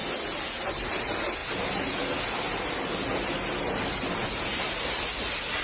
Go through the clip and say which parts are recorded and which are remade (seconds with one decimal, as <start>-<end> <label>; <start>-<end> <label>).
0.0-5.6 recorded